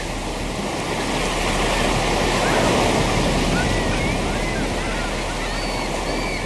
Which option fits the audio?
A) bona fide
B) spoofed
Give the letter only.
A